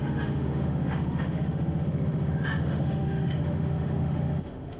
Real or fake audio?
fake